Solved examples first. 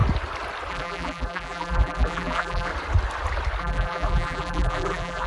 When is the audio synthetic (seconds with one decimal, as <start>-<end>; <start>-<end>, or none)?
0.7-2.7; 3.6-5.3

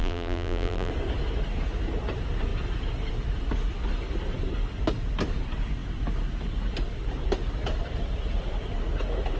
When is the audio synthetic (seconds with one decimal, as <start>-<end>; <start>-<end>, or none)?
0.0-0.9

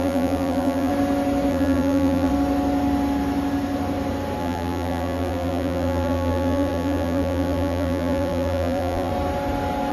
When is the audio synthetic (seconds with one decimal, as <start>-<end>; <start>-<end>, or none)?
0.0-0.9; 1.5-2.3; 4.4-9.1